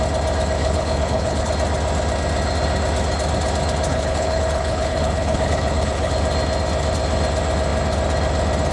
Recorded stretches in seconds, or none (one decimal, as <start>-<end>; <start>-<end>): 0.0-0.6; 1.5-3.9; 6.1-8.7